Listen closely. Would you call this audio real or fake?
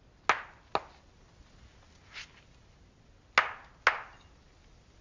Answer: real